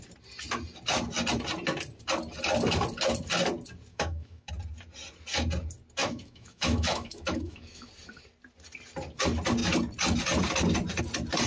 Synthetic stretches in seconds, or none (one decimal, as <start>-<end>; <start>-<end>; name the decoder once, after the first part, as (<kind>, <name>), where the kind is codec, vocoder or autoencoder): 3.9-4.5 (autoencoder, DAC-VAE); 6.0-7.9